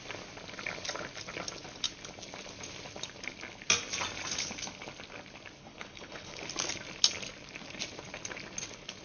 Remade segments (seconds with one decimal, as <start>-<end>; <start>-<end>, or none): 5.6-6.4